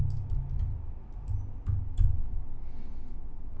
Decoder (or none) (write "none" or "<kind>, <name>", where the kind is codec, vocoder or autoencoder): none